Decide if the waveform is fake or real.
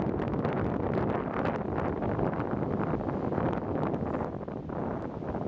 real